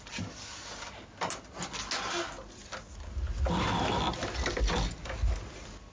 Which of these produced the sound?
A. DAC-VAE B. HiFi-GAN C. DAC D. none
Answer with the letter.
D